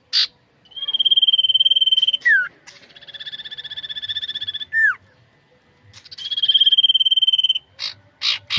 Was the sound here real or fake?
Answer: real